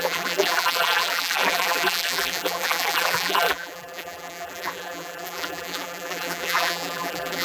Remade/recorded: remade